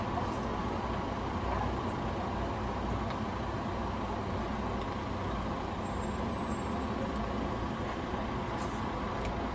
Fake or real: real